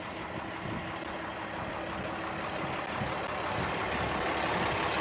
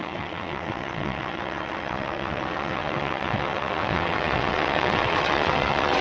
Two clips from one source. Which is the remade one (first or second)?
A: second